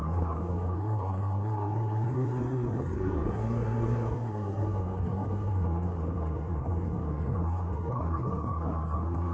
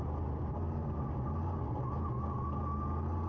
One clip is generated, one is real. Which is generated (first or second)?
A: first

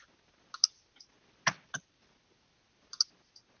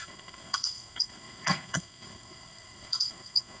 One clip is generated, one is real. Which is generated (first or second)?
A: second